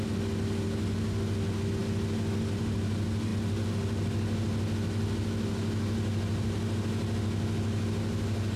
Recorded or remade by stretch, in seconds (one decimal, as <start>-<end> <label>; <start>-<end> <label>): 0.0-8.6 recorded